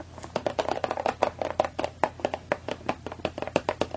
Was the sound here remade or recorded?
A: recorded